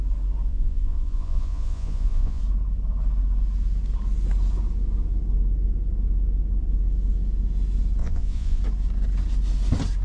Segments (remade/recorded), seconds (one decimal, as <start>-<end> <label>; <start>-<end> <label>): 0.0-0.5 recorded; 0.5-2.4 remade; 2.4-8.0 recorded; 8.0-8.6 remade; 8.6-10.0 recorded